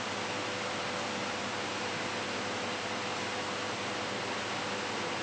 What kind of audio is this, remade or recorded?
recorded